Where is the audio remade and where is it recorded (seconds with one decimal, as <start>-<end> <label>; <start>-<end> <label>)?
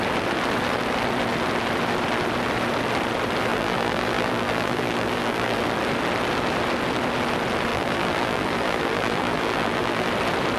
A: 0.0-3.5 recorded; 3.5-5.6 remade; 5.6-7.7 recorded; 7.7-10.1 remade; 10.1-10.6 recorded